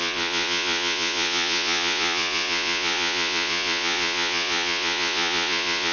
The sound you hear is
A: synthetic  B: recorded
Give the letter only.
A